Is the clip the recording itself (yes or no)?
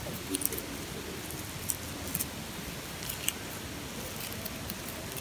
yes